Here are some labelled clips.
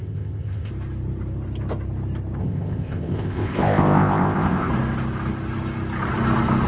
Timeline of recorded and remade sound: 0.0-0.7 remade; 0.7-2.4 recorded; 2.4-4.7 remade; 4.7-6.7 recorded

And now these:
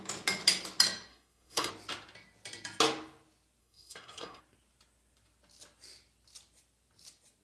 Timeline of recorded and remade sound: 0.0-1.1 recorded; 1.1-1.7 remade; 1.7-3.6 recorded; 3.6-4.4 remade; 4.4-7.4 recorded

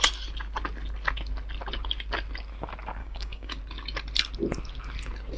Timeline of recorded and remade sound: 0.0-3.0 recorded; 3.0-3.6 remade; 3.6-5.4 recorded

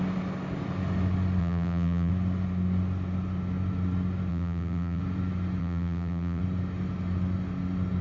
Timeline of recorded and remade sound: 0.0-1.4 recorded; 1.4-2.1 remade; 2.1-4.3 recorded; 4.3-5.0 remade; 5.0-5.6 recorded; 5.6-6.4 remade; 6.4-8.0 recorded

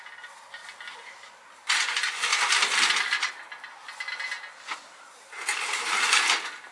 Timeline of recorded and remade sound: 0.0-6.7 recorded